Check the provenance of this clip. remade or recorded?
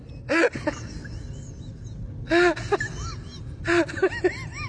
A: recorded